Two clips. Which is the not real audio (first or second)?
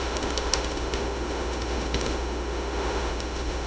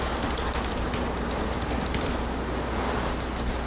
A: first